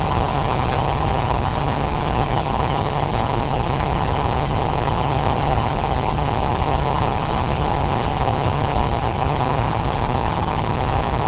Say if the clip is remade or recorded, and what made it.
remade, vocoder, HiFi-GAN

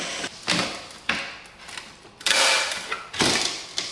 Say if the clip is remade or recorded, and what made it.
recorded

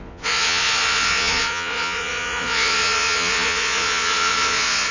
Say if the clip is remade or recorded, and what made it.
remade, vocoder, Vocos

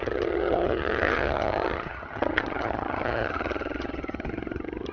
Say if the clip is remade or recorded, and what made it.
remade, vocoder, HiFi-GAN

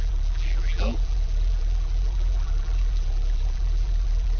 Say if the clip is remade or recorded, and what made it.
remade, vocoder, BigVGAN v2